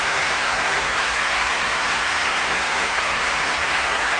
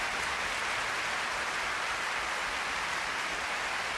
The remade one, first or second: first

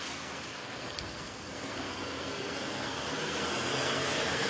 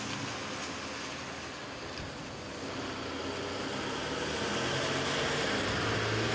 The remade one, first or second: first